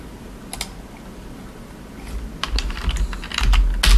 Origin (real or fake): real